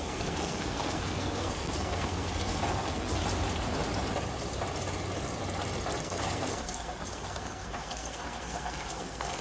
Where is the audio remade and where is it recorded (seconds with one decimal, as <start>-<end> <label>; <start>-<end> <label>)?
0.0-3.2 remade; 3.2-6.0 recorded; 6.0-9.4 remade